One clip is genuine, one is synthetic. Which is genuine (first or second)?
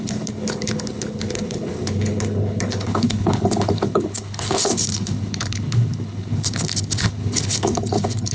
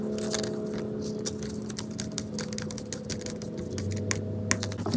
second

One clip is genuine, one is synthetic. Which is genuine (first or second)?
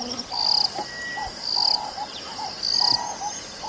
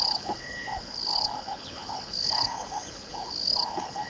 first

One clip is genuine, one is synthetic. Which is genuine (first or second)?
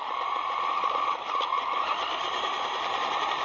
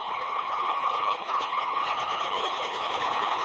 first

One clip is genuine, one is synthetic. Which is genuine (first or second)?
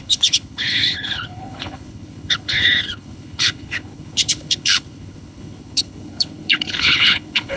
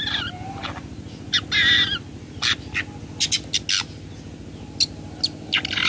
second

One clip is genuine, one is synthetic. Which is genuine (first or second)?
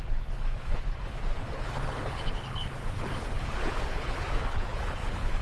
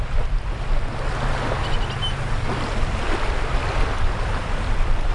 second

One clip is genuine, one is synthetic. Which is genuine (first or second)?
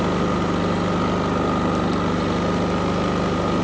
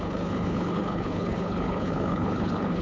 first